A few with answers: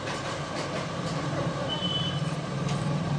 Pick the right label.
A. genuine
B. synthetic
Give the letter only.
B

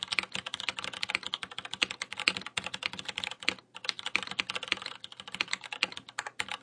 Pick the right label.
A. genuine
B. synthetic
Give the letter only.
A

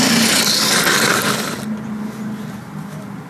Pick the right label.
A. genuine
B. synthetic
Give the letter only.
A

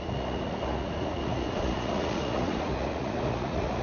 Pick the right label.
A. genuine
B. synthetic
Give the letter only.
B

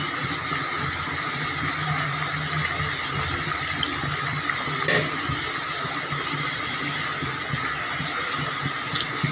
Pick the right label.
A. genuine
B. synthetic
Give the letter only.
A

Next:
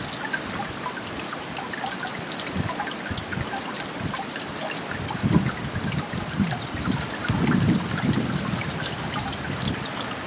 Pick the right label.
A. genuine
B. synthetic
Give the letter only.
A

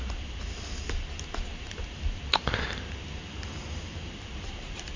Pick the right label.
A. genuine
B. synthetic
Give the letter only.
B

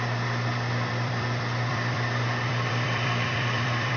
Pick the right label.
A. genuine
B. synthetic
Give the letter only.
B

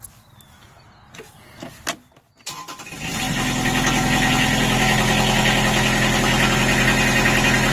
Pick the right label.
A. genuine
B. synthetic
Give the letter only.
A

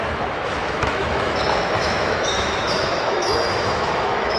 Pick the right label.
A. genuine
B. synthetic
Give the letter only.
B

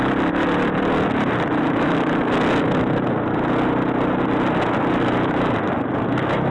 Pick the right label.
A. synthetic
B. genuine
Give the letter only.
B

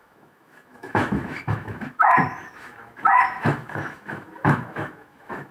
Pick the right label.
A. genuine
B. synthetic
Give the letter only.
B